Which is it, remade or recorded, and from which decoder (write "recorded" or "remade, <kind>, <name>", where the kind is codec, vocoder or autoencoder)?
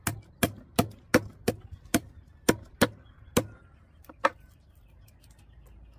recorded